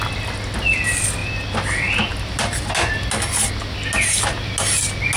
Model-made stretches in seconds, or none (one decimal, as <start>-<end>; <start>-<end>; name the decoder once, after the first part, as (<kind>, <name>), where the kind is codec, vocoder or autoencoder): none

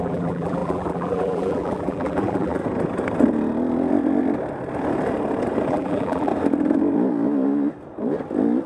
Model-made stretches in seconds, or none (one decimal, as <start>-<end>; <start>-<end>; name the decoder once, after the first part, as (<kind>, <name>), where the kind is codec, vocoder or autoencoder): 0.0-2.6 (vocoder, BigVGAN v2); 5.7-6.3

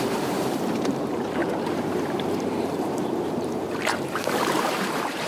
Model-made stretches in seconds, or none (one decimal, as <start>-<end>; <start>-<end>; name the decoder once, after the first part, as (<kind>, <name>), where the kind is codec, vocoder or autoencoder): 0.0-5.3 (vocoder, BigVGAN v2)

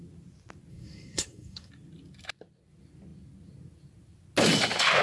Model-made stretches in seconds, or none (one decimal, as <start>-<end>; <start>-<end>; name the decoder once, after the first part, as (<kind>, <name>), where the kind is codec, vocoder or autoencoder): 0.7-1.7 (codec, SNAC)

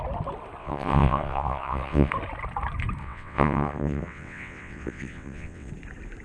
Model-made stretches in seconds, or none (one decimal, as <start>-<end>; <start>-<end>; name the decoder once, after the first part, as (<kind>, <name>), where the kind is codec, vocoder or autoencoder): 0.6-2.1 (vocoder, WaveNeXt); 3.0-5.7

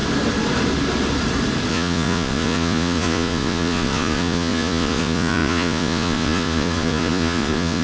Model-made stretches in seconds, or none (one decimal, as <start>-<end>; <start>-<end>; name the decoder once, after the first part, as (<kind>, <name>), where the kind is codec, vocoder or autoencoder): 1.7-7.8 (vocoder, Vocos)

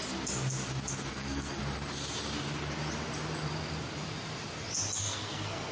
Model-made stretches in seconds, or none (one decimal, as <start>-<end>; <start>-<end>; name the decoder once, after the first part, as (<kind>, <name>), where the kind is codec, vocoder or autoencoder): 1.1-1.6 (codec, SNAC); 5.0-5.7